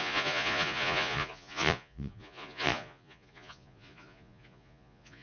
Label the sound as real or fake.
fake